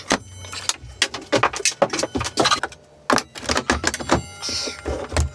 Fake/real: real